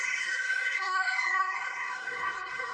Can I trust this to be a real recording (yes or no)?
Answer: no